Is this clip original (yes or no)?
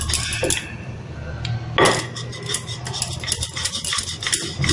yes